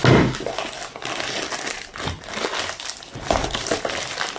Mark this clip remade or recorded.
recorded